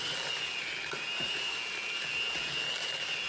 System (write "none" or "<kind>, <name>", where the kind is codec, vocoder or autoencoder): none